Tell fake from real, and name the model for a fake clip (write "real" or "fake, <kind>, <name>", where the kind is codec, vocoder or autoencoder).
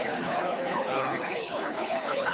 fake, codec, HILCodec